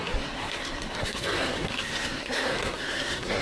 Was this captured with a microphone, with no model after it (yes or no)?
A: no